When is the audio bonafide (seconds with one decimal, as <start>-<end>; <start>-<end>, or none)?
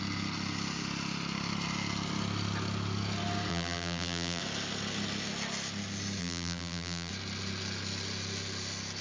0.0-3.5; 4.4-6.2; 7.1-9.0